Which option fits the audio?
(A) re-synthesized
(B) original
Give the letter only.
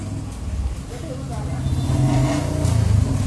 B